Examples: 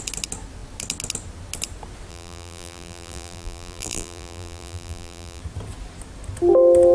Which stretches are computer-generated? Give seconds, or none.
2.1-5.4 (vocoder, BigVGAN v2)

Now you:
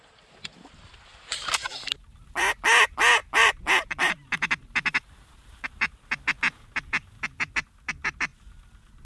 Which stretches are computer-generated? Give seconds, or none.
1.1-1.7 (vocoder, BigVGAN v2); 3.2-6.4

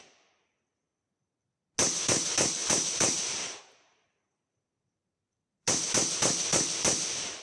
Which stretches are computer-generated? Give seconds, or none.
2.6-5.7 (vocoder, BigVGAN v2)

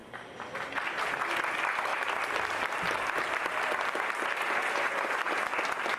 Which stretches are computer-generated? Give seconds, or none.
none

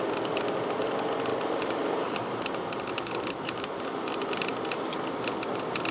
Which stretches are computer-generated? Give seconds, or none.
1.3-3.8 (vocoder, BigVGAN v2)

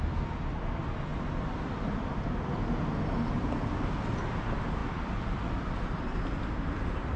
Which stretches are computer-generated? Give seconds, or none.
1.1-2.3 (vocoder, BigVGAN v2); 4.8-6.0

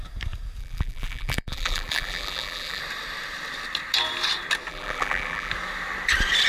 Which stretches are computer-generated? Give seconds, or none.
0.6-2.8 (vocoder, BigVGAN v2); 4.7-5.5